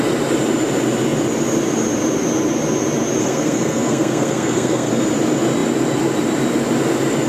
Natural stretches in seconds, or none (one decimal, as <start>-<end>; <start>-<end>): 0.0-3.2; 4.9-7.3